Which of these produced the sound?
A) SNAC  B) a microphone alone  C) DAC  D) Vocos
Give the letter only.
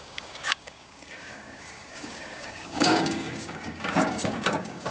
C